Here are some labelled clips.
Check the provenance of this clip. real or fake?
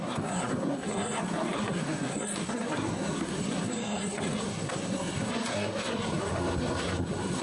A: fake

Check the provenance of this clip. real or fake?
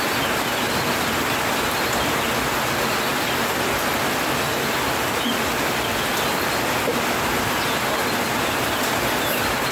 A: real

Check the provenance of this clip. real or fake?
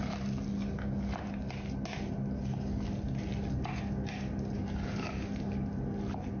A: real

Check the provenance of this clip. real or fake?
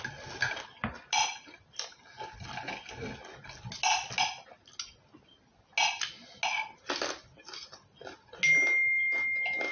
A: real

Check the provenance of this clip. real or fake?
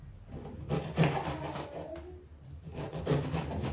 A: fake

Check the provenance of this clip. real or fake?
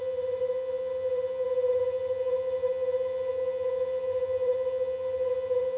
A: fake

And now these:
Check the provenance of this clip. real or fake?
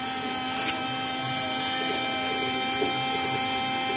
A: real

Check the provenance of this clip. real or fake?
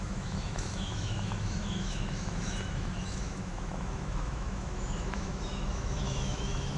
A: fake